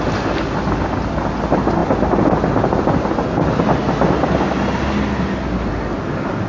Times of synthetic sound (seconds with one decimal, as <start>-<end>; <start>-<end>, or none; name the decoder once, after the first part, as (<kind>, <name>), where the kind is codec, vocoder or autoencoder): none